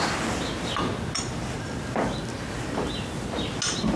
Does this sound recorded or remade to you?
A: recorded